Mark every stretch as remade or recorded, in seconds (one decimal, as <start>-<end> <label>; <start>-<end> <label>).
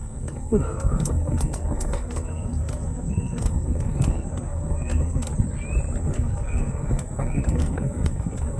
0.0-5.3 remade; 5.3-6.0 recorded; 6.0-8.6 remade